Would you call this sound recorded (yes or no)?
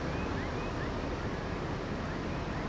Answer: yes